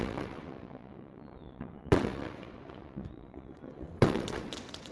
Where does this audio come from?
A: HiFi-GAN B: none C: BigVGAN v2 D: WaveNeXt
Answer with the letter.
D